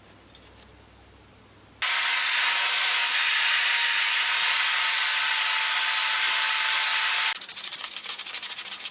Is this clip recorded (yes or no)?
yes